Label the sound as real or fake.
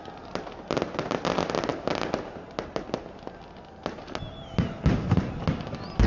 real